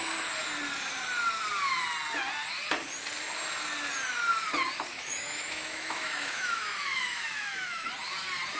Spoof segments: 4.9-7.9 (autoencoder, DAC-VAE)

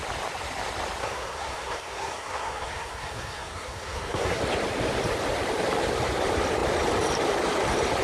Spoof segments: 1.0-4.4 (codec, SNAC)

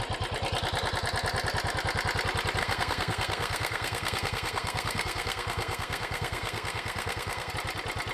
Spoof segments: 2.6-7.5 (codec, SNAC)